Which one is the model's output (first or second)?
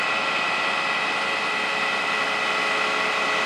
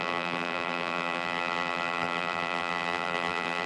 second